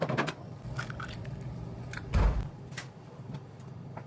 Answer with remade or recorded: remade